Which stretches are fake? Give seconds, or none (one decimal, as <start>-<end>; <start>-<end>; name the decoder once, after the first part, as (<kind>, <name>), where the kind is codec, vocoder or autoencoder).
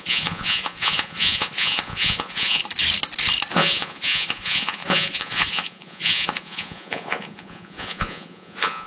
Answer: 0.0-2.6 (vocoder, Vocos); 3.5-8.9